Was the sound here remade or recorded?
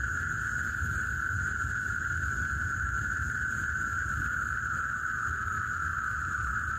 recorded